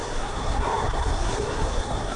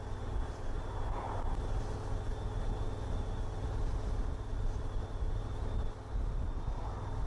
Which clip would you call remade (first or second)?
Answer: first